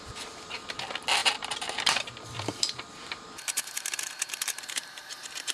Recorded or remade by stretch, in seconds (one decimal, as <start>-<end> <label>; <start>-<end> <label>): 0.0-5.5 remade